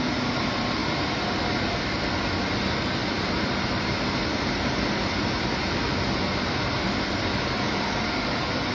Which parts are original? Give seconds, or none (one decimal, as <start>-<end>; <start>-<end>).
0.0-8.7